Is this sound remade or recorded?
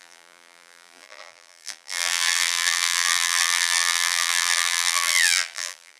remade